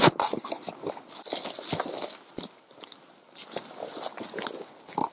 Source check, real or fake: real